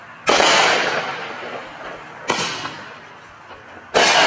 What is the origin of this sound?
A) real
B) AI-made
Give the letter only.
A